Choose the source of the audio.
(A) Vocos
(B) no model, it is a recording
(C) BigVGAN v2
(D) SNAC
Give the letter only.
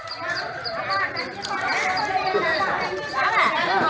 C